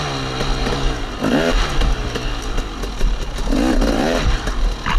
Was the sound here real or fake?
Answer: real